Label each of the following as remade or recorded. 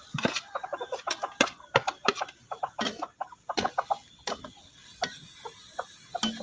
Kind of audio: recorded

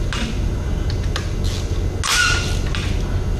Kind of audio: recorded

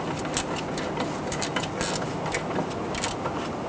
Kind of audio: recorded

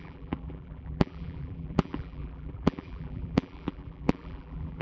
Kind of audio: remade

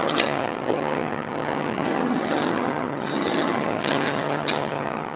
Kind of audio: remade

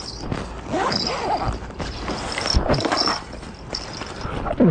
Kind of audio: recorded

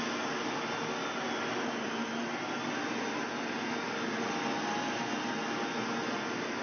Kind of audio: recorded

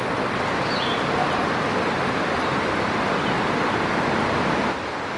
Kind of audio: recorded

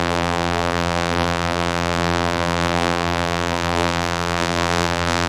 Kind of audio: remade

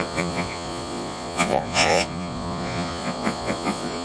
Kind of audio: remade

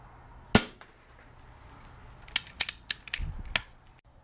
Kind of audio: recorded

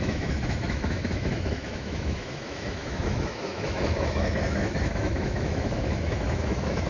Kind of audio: remade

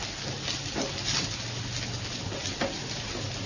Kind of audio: recorded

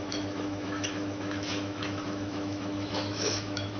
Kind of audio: remade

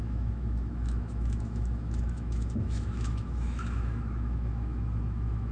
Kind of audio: remade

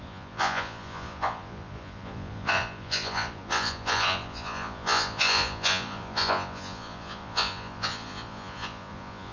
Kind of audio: remade